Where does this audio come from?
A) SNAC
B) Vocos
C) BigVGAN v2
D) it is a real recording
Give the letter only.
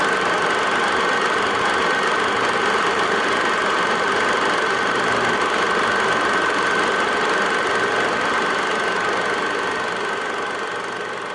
D